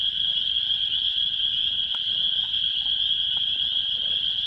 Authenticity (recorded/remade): recorded